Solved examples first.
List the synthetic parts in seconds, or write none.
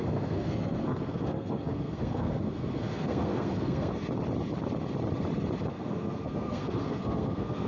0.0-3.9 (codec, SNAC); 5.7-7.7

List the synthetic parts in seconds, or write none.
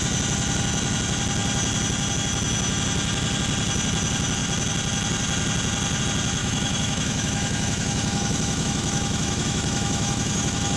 6.4-10.8 (autoencoder, DAC-VAE)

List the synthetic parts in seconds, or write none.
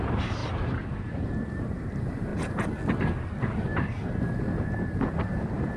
0.0-2.3 (vocoder, BigVGAN v2); 4.2-5.8